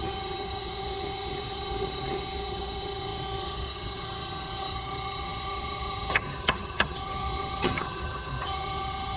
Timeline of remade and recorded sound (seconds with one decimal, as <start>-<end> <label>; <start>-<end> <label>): 0.0-9.2 remade